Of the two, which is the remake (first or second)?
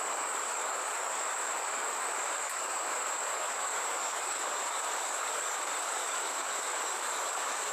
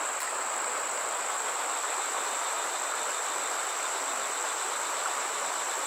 first